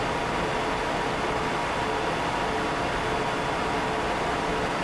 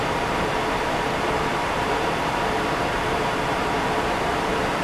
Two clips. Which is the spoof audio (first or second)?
second